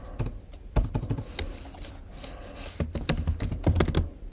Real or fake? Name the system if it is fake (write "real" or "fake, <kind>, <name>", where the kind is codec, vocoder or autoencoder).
real